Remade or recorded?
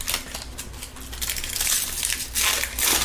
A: recorded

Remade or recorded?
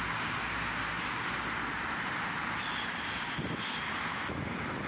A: recorded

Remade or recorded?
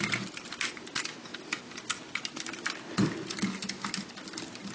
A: recorded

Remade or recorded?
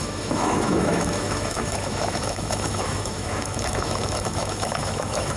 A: remade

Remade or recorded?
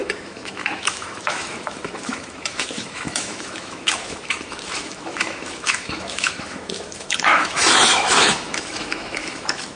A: remade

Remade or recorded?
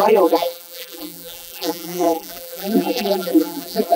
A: remade